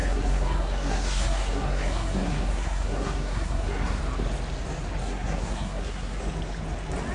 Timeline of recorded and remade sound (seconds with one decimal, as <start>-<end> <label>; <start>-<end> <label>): 0.0-4.0 remade; 4.0-5.0 recorded; 5.0-6.2 remade; 6.2-7.1 recorded